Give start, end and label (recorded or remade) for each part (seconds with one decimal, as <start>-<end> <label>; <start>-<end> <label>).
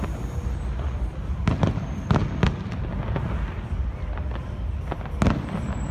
0.0-5.9 recorded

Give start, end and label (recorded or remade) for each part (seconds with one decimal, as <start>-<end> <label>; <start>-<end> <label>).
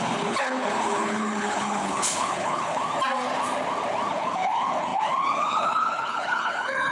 0.0-2.8 remade; 2.8-4.1 recorded; 4.1-6.9 remade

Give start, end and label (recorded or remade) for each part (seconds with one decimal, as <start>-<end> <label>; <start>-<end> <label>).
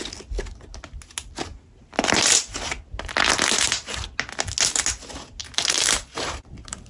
0.0-1.5 recorded; 1.5-2.5 remade; 2.5-5.4 recorded; 5.4-6.9 remade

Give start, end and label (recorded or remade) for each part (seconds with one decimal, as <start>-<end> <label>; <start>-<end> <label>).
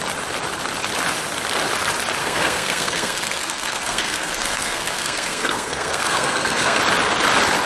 0.0-2.2 recorded; 2.2-6.8 remade; 6.8-7.7 recorded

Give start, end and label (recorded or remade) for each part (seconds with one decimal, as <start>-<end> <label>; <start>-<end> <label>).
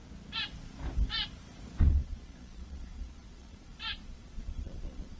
0.0-1.8 recorded; 1.8-5.2 remade